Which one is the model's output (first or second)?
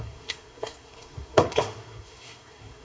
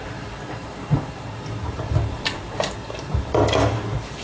first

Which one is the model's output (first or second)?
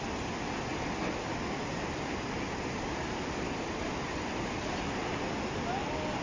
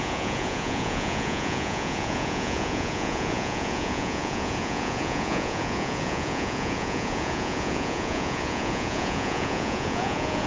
second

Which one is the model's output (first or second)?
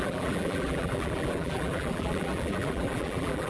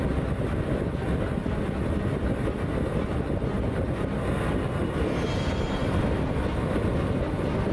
first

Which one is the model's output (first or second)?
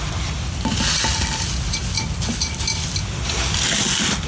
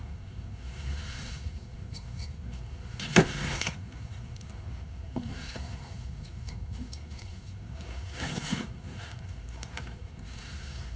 second